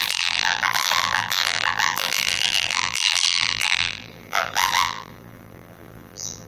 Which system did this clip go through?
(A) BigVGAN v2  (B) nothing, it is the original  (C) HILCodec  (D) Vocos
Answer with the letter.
A